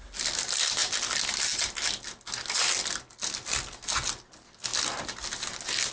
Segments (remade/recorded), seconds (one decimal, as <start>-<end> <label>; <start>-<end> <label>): 0.0-5.9 recorded